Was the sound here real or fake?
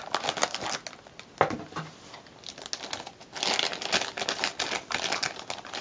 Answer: real